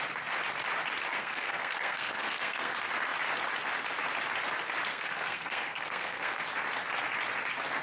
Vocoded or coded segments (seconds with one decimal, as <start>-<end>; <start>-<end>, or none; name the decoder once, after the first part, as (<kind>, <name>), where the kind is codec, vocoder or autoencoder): 1.1-2.7 (codec, SNAC); 4.9-6.4